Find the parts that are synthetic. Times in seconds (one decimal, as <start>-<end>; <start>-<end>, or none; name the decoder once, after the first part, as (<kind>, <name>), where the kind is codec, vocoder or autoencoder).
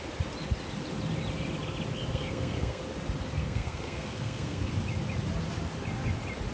2.1-2.8 (codec, SNAC); 3.4-4.7